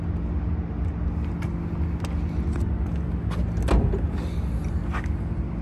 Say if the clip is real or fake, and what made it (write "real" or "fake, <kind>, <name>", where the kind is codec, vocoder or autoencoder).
real